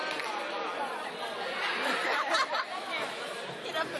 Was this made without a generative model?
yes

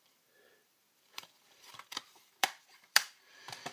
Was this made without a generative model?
no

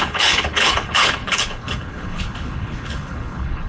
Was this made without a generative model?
no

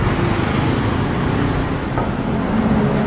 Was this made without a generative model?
yes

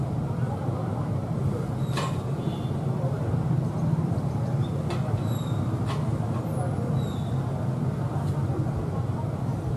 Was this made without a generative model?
yes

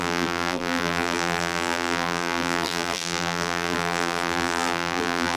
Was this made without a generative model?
no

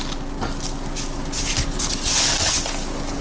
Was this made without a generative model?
yes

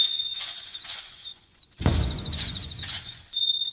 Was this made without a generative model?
no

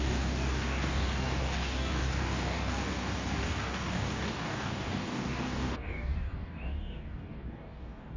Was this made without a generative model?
no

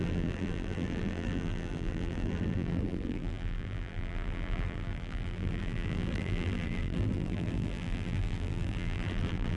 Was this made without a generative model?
no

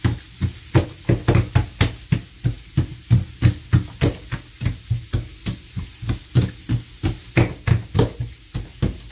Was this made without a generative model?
yes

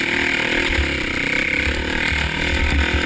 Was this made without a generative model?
yes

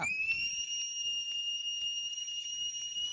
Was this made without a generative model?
yes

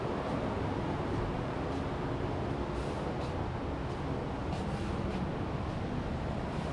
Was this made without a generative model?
yes